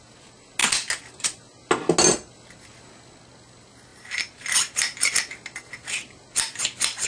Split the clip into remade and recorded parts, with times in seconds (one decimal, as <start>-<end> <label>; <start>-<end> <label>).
0.0-3.9 recorded; 3.9-5.2 remade; 5.2-7.1 recorded